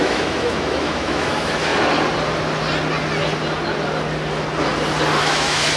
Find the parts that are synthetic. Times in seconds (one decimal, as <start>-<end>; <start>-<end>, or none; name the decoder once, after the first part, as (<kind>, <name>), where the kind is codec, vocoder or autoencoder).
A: 0.0-1.7 (autoencoder, DAC-VAE); 5.2-5.8